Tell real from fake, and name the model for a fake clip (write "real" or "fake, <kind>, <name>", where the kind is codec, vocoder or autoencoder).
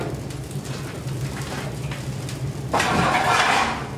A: real